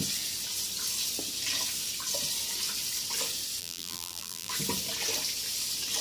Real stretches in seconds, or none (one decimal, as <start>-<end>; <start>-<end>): 0.0-3.6; 4.5-6.0